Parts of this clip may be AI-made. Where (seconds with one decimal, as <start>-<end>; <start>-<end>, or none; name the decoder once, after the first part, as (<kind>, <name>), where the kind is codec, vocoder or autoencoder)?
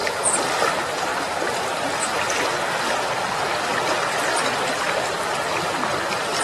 none